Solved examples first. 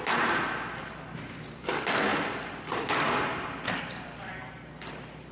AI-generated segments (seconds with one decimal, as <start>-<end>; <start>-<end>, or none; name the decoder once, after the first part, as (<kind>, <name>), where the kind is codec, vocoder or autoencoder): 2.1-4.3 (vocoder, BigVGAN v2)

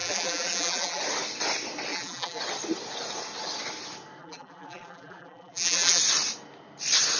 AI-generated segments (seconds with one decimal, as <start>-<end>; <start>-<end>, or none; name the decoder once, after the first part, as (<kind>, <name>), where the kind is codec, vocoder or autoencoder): 0.0-1.0 (vocoder, BigVGAN v2); 1.9-2.4; 4.2-6.0

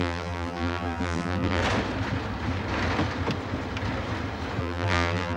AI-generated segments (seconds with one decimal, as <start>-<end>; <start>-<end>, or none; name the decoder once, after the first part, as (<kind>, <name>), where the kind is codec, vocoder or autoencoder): 0.0-1.6 (vocoder, BigVGAN v2); 4.6-5.4